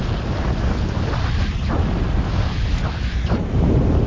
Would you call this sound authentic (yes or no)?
yes